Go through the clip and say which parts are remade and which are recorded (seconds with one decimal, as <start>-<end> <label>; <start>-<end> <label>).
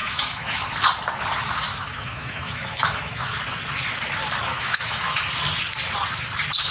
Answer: 0.0-0.6 remade; 0.6-1.7 recorded; 1.7-3.3 remade; 3.3-4.5 recorded; 4.5-5.2 remade; 5.2-6.7 recorded